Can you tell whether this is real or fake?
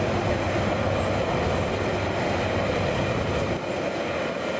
real